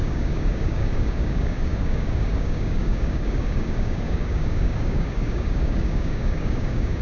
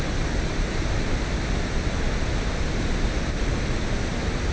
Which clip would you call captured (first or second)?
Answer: second